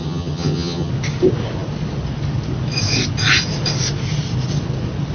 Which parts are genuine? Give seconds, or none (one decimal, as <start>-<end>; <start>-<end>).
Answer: 0.9-5.1

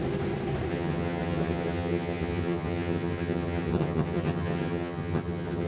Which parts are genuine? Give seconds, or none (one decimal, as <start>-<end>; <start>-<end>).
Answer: 0.0-0.7